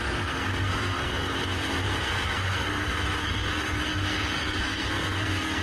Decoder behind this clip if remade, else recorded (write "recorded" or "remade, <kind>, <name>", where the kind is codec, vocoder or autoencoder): remade, codec, SNAC